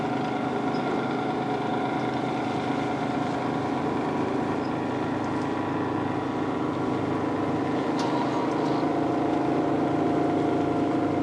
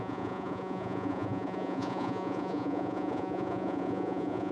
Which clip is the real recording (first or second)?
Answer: first